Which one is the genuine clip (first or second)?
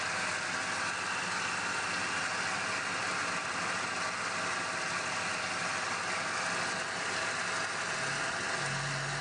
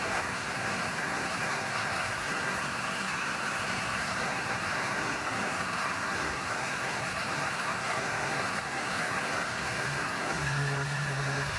first